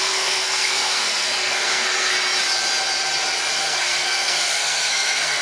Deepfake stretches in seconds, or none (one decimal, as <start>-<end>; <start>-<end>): 0.0-2.1; 3.5-5.4